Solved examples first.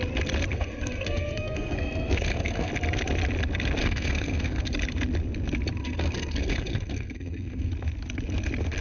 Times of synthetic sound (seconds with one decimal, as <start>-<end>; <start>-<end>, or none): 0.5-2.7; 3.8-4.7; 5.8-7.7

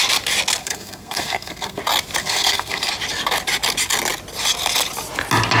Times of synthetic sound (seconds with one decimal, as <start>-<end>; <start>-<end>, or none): 0.6-1.8; 2.2-2.9

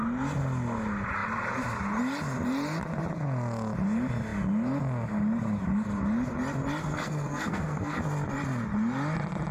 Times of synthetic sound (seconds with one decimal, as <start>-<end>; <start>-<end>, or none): 6.8-8.0

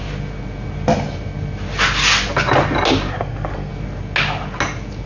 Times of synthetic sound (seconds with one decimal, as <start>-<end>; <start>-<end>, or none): 3.1-3.7